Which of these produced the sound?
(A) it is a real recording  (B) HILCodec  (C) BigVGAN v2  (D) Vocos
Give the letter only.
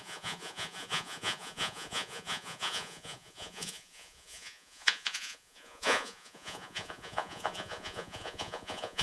D